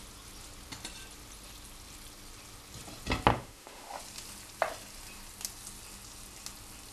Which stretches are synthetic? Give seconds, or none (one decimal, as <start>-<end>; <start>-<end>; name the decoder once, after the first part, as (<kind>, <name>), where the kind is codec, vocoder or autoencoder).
3.3-4.0 (autoencoder, DAC-VAE)